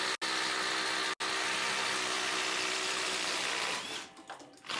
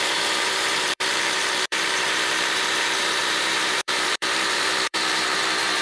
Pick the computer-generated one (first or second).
second